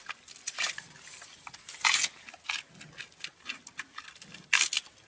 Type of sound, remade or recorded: recorded